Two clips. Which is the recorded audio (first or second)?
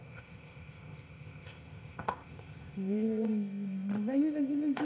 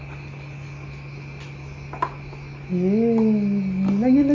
second